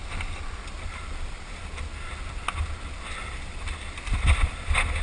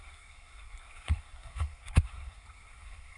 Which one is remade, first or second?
second